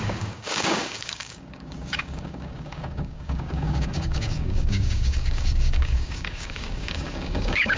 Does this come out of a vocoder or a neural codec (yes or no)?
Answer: yes